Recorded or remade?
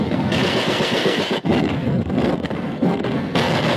remade